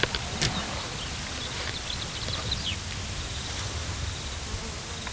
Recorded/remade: recorded